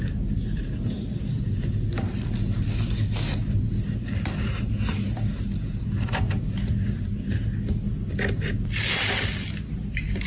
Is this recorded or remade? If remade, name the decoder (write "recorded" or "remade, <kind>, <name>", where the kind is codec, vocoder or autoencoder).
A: recorded